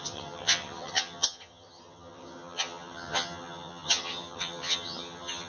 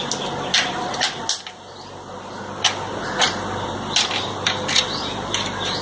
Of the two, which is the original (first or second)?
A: second